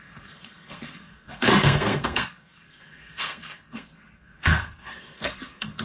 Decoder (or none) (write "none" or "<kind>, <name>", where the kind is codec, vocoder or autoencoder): codec, SNAC